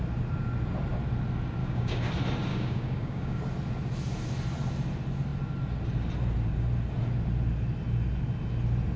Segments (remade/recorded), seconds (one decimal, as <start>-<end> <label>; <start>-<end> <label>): 0.0-1.6 recorded; 1.6-2.1 remade; 2.1-2.5 recorded; 2.5-3.4 remade; 3.4-9.0 recorded

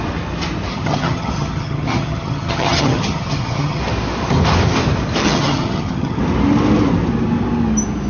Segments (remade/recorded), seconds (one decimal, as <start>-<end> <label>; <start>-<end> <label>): 0.0-0.7 recorded; 0.7-3.8 remade; 3.8-5.2 recorded; 5.2-6.2 remade; 6.2-8.1 recorded